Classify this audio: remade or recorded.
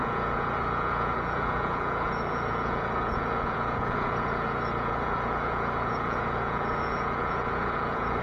remade